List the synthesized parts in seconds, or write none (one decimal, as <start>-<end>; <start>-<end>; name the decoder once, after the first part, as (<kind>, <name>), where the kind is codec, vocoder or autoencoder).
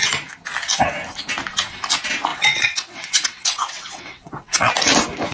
2.3-4.7 (vocoder, WaveNeXt)